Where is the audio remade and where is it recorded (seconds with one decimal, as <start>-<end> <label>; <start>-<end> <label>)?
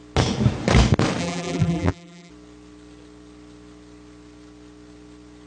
0.0-1.2 recorded; 1.2-2.3 remade; 2.3-5.5 recorded